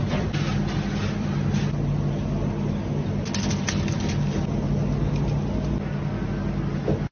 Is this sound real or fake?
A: real